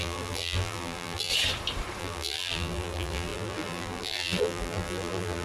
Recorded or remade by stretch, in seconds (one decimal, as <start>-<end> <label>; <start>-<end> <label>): 0.0-1.3 remade; 1.3-2.0 recorded; 2.0-5.4 remade